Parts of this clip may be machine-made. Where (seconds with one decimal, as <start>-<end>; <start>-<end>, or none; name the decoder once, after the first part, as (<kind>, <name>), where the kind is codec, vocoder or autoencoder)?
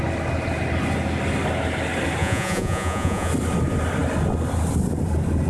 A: 2.2-3.3 (vocoder, Vocos)